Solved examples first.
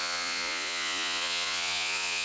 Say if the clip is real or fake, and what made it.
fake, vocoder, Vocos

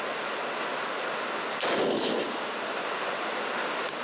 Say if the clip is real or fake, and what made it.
real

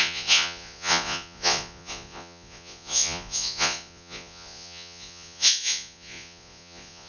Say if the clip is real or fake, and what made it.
fake, vocoder, Vocos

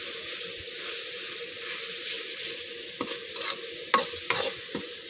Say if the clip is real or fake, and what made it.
real